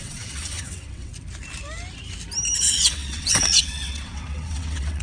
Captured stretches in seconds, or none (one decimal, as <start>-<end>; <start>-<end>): 1.1-2.6